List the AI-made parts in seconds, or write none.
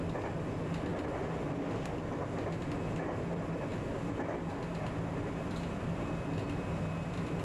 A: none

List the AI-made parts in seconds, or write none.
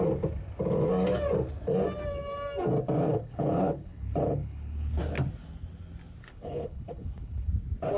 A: 3.1-5.0 (codec, HILCodec); 6.2-7.5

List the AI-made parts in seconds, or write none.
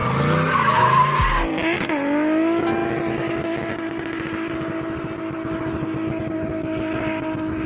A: none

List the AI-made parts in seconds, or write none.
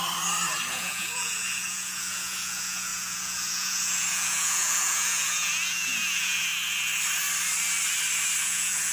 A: 0.7-6.5 (vocoder, Vocos); 8.4-8.9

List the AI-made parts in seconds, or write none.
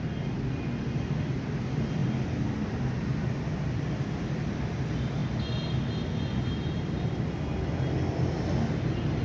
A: none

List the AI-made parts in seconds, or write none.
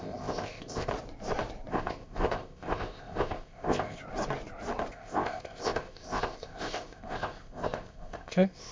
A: 0.0-0.9 (codec, ZipCodec); 1.7-4.0; 4.9-8.7